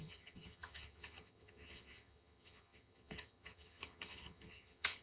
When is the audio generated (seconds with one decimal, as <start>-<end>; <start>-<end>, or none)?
0.0-5.0